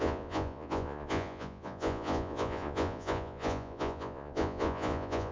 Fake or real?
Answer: fake